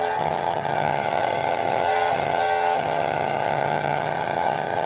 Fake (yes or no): yes